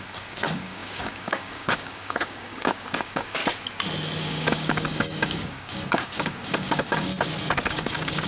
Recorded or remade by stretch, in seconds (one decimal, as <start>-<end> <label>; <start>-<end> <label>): 0.0-3.4 remade; 3.4-4.2 recorded; 4.2-7.1 remade; 7.1-7.7 recorded; 7.7-8.3 remade